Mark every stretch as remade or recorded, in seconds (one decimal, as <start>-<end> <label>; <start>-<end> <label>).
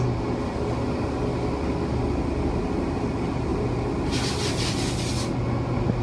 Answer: 0.0-6.0 recorded